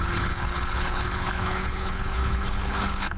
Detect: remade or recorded remade